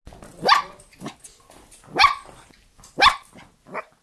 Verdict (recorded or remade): recorded